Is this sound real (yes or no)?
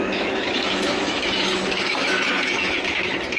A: no